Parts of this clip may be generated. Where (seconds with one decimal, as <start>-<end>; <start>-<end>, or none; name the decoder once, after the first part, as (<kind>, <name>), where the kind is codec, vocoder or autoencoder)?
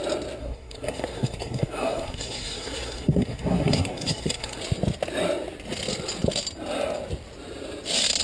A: 0.4-4.6 (codec, SNAC)